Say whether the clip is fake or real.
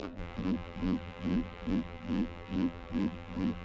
fake